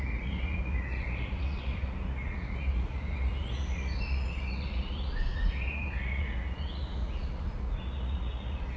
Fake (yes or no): yes